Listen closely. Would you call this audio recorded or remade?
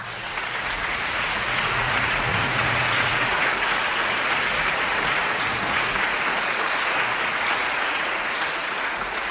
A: remade